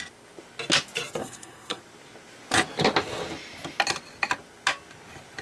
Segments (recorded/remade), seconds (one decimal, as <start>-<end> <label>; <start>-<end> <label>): 0.0-1.2 recorded; 1.2-1.8 remade; 1.8-5.4 recorded